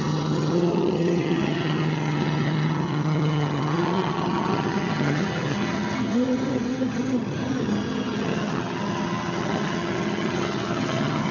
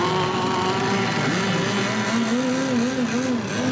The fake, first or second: first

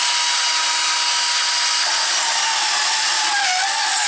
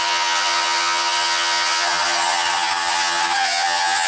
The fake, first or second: second